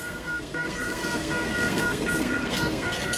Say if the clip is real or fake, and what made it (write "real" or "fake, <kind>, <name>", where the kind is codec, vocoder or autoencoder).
fake, codec, SNAC